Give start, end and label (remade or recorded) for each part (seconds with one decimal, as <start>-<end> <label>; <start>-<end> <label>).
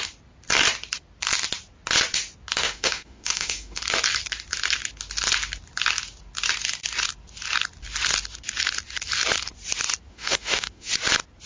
0.0-2.6 recorded; 2.6-3.8 remade; 3.8-10.1 recorded; 10.1-10.9 remade; 10.9-11.5 recorded